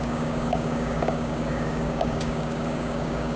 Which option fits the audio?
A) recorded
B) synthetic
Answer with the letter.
B